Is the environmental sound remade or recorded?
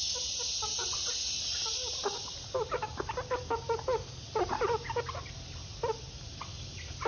recorded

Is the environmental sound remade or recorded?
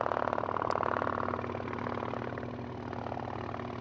recorded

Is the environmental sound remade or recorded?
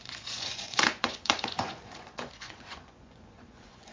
remade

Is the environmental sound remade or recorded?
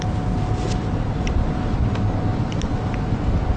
recorded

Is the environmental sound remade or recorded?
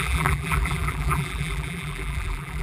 remade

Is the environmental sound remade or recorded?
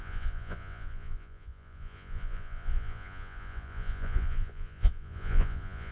remade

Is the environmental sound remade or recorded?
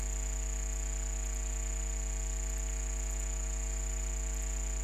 recorded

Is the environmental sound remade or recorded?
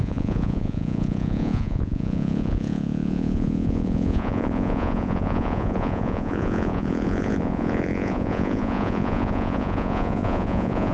remade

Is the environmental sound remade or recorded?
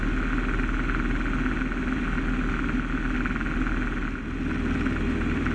recorded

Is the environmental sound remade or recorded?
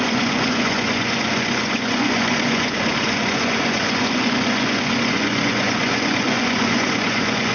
remade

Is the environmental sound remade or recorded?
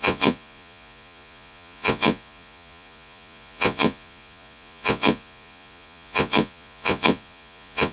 remade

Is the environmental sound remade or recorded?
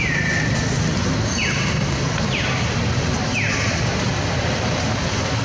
recorded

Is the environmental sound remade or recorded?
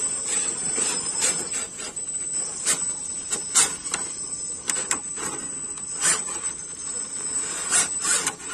remade